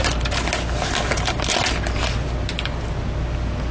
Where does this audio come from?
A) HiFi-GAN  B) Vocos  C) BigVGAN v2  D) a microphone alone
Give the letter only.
D